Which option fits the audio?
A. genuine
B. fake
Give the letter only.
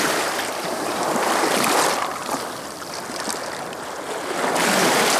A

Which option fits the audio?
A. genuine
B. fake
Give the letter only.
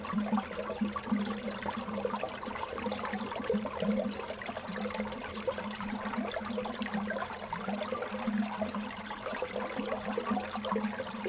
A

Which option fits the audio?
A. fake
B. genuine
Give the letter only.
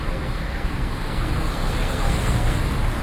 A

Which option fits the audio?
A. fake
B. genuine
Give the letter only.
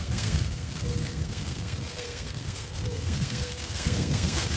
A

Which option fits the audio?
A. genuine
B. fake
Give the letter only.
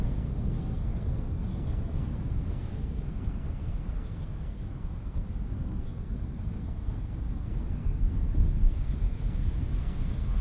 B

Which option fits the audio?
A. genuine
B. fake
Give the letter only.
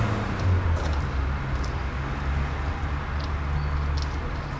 A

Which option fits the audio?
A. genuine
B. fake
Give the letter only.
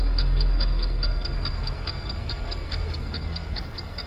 B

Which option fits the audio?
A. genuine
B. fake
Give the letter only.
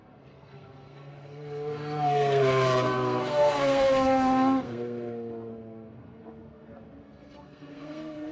B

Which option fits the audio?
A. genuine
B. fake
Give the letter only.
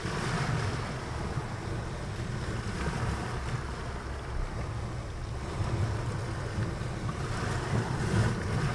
A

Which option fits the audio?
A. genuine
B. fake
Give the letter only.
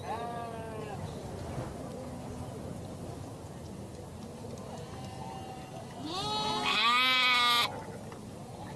A